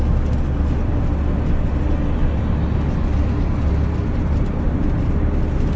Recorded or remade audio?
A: recorded